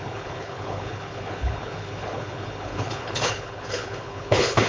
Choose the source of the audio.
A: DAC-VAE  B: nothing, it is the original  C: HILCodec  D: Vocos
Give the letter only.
C